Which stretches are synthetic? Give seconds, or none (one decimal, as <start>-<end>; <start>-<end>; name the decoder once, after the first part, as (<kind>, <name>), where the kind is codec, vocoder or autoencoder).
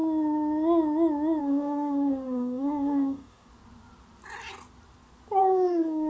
1.4-3.5 (codec, DAC); 5.4-6.1